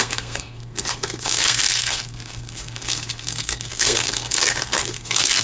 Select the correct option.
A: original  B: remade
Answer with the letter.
B